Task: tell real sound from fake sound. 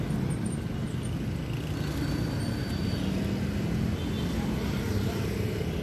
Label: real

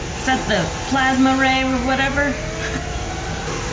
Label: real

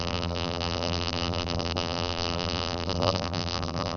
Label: fake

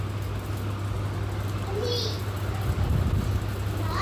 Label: real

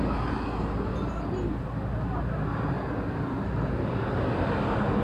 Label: real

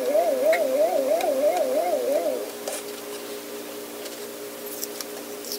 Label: fake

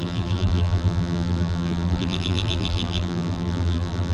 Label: fake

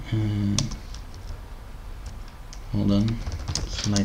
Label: real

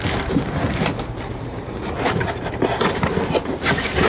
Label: fake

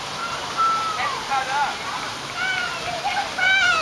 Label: fake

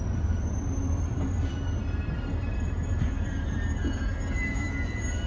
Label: fake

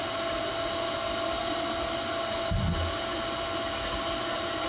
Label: real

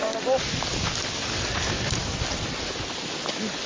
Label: real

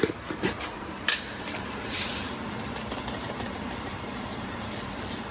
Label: fake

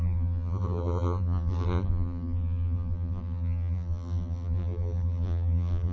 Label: fake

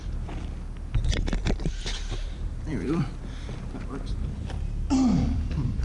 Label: fake